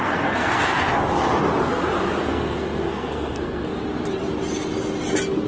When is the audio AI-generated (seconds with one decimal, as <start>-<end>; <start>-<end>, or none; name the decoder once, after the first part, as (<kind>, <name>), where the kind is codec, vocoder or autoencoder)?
0.0-0.9 (codec, SNAC); 2.2-3.7